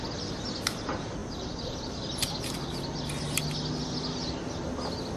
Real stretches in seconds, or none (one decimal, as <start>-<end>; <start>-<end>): 0.0-5.2